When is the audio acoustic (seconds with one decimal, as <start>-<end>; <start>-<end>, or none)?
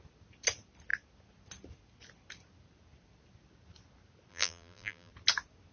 0.0-4.3; 5.1-5.7